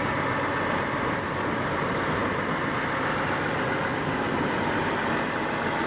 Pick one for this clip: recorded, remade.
recorded